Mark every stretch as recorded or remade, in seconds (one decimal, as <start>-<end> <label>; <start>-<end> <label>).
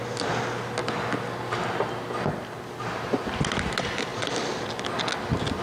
0.0-4.1 recorded; 4.1-4.7 remade; 4.7-5.6 recorded